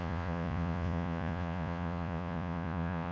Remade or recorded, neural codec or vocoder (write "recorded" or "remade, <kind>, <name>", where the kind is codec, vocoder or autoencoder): remade, vocoder, Vocos